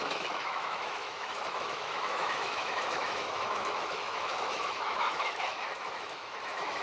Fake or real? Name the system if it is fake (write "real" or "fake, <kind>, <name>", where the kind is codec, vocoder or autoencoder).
fake, autoencoder, DAC-VAE